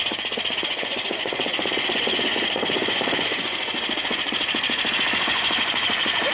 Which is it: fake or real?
fake